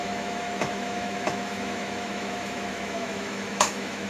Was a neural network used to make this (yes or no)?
yes